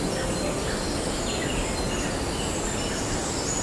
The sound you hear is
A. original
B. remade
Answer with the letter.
A